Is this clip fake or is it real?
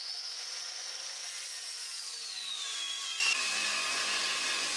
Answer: fake